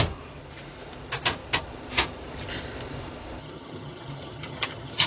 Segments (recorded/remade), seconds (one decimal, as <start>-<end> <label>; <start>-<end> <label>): 0.0-3.4 recorded; 3.4-5.1 remade